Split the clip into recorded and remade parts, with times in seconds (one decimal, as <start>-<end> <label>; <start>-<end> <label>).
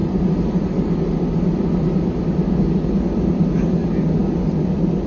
0.0-5.1 recorded